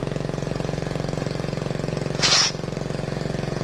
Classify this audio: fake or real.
fake